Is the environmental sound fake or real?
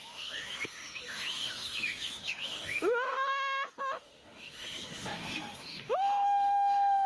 fake